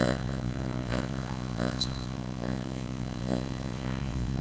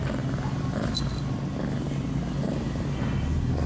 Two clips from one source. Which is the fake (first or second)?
first